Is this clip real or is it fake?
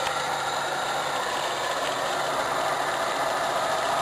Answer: real